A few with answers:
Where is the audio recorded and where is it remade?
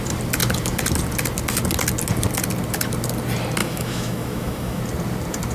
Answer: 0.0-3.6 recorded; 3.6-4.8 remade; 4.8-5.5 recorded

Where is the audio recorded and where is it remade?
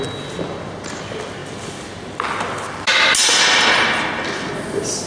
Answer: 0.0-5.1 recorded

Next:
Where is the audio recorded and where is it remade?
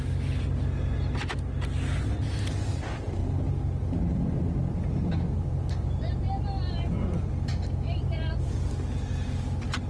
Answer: 0.0-9.9 recorded